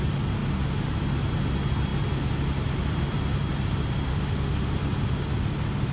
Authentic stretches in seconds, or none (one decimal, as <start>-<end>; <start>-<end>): 0.0-4.1; 4.7-5.9